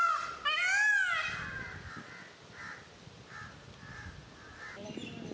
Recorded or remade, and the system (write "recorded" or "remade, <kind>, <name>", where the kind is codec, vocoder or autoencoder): recorded